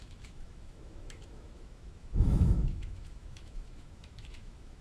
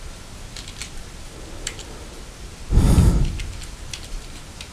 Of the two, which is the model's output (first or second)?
first